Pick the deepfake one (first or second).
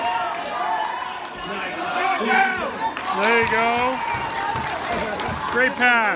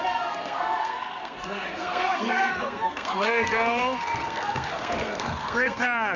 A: second